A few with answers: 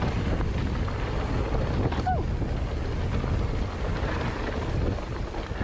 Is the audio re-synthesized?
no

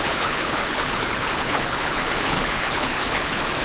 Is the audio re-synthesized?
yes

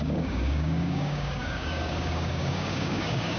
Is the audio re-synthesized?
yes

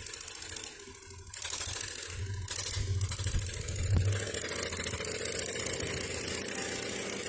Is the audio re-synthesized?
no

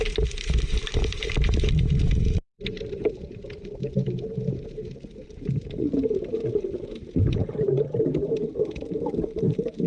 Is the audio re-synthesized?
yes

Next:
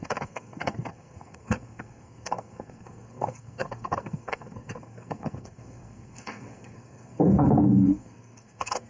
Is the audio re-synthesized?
yes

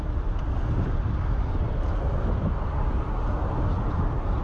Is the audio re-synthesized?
no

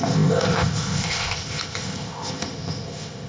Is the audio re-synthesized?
yes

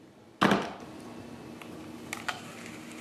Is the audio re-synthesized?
no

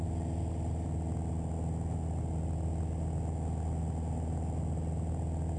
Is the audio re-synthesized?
no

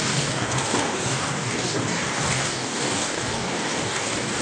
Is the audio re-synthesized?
yes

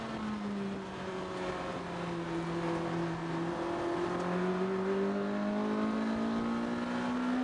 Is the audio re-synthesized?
no